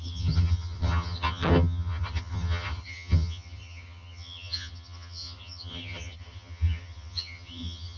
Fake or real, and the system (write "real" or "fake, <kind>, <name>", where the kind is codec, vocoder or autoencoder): fake, vocoder, HiFi-GAN